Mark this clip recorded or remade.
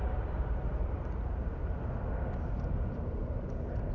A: recorded